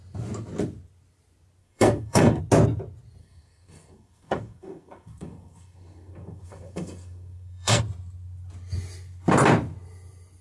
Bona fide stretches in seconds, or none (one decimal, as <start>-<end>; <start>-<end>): 0.0-1.6; 2.4-3.2; 7.8-10.4